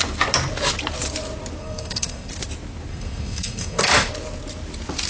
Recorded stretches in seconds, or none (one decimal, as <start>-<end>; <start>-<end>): 0.0-1.6; 2.3-2.9; 3.8-5.1